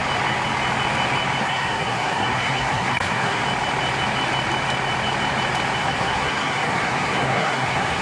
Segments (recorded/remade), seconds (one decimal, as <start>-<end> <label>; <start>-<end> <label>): 0.0-1.4 recorded; 1.4-3.4 remade; 3.4-5.8 recorded; 5.8-8.0 remade